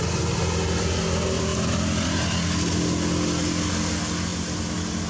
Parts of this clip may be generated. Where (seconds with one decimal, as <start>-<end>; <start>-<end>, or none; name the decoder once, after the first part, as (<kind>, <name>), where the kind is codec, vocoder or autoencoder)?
none